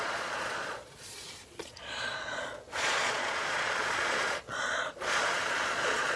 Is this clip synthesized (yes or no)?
yes